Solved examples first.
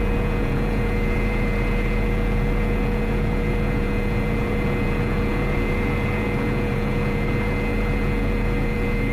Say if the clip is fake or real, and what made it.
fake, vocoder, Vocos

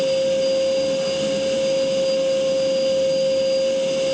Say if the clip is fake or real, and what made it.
real